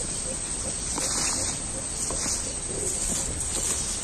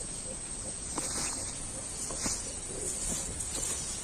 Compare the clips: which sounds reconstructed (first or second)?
second